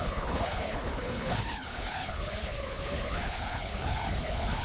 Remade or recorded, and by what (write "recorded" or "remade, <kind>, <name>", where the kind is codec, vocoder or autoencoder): remade, codec, HILCodec